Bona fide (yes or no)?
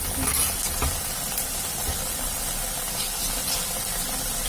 yes